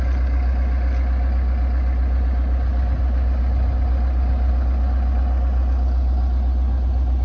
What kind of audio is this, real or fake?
real